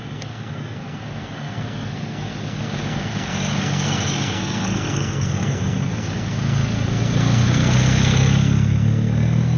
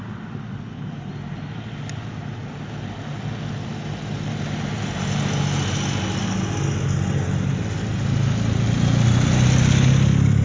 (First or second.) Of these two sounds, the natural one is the second